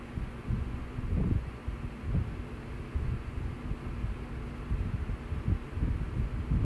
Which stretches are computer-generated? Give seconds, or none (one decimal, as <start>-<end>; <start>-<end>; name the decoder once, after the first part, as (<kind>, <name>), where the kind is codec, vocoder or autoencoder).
0.0-1.6 (vocoder, Vocos); 2.9-3.6